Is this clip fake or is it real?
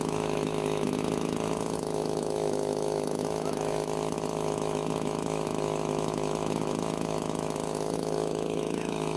fake